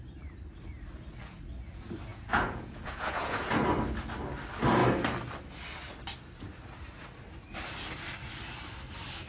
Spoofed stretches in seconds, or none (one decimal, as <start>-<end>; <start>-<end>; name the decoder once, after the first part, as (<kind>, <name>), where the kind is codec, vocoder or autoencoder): 2.1-3.5 (vocoder, Vocos)